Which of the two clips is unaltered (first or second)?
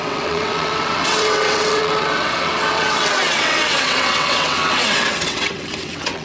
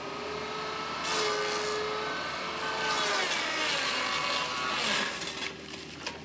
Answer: second